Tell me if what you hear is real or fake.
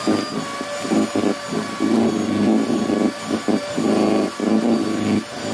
real